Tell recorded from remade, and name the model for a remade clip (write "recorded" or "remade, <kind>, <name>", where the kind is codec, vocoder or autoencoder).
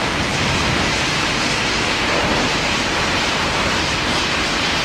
remade, vocoder, BigVGAN v2